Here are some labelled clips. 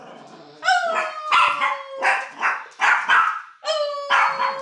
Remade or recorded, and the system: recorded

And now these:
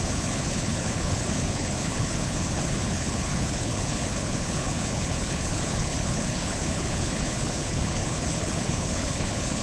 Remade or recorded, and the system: remade, codec, HILCodec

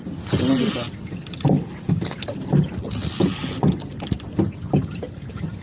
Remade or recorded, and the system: recorded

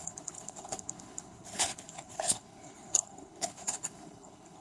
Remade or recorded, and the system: remade, codec, HILCodec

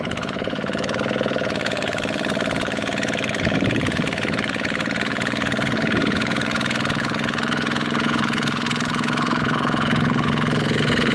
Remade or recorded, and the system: remade, codec, HILCodec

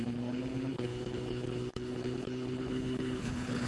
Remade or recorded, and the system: remade, codec, HILCodec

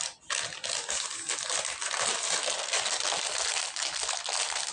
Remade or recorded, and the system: recorded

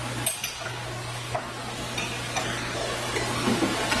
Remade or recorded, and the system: recorded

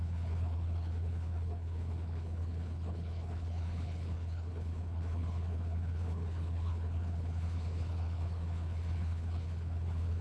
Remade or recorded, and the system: remade, codec, HILCodec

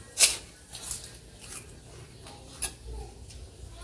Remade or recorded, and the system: recorded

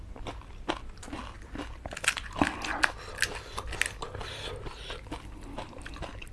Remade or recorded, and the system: recorded